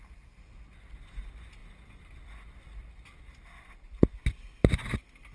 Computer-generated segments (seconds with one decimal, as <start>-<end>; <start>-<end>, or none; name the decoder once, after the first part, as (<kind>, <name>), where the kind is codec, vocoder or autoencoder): none